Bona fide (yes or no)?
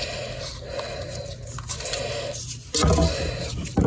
yes